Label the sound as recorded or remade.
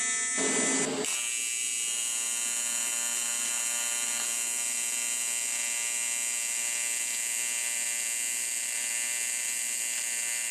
recorded